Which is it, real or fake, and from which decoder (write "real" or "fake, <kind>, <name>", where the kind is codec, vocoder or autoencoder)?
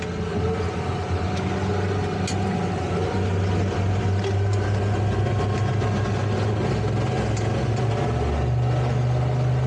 real